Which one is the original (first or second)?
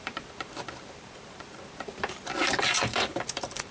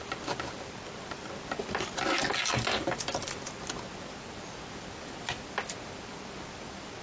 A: second